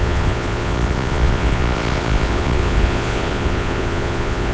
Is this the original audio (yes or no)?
no